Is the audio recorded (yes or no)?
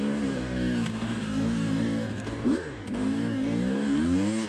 no